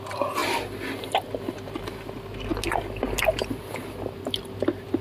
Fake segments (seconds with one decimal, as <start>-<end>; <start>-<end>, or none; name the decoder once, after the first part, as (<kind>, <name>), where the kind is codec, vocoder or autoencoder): none